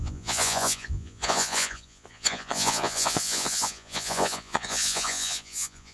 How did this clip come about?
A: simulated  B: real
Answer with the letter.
A